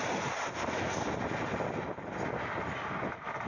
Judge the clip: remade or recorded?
recorded